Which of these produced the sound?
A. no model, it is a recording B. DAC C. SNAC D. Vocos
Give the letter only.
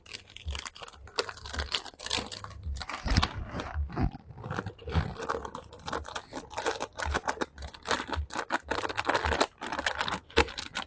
A